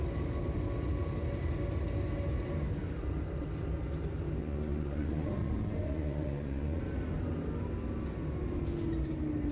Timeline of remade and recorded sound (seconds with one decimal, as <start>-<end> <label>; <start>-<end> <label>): 0.0-4.4 recorded; 4.4-6.8 remade; 6.8-9.5 recorded